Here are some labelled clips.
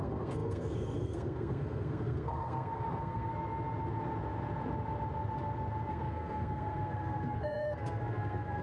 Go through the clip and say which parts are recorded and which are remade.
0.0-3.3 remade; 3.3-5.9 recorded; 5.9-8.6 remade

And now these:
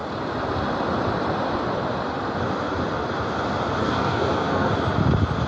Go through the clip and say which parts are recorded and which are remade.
0.0-3.8 recorded; 3.8-4.7 remade; 4.7-5.5 recorded

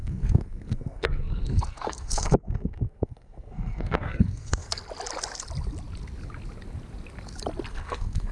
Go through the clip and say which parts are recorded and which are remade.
0.0-4.8 remade; 4.8-7.7 recorded; 7.7-8.3 remade

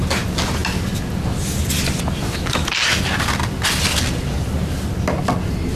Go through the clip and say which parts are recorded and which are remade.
0.0-5.8 recorded

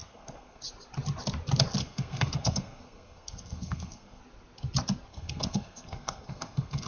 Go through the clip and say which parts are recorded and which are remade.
0.0-0.6 remade; 0.6-1.8 recorded; 1.8-4.2 remade; 4.2-5.1 recorded; 5.1-6.9 remade

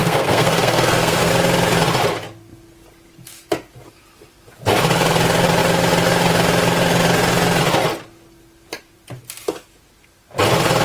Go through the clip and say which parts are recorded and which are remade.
0.0-1.3 remade; 1.3-10.8 recorded